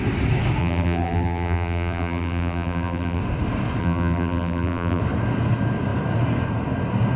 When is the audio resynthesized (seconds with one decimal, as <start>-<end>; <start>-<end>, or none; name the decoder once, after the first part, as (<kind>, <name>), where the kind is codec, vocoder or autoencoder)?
0.6-3.2 (vocoder, BigVGAN v2); 3.8-5.0